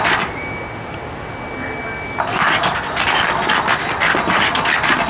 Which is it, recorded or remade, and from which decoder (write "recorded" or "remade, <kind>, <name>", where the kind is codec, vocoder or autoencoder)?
recorded